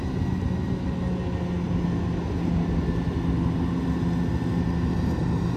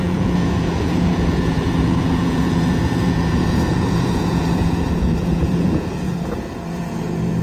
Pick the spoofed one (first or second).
second